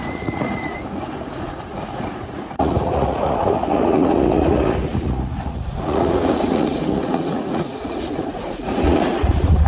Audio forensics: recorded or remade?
remade